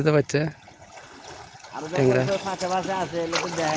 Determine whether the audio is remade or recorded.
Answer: recorded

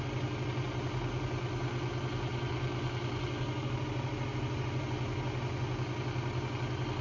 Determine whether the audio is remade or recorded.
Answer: recorded